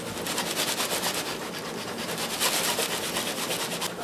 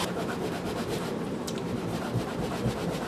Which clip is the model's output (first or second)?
second